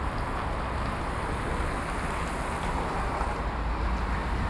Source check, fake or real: real